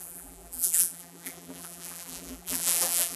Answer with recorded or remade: remade